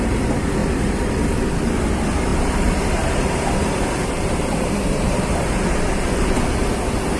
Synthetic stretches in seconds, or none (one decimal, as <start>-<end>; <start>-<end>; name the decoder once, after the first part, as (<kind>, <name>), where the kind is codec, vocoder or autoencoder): 0.6-1.1 (vocoder, BigVGAN v2); 2.3-5.8